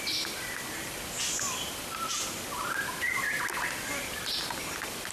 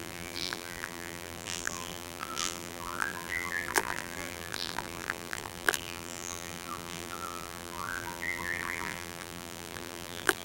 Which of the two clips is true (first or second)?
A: first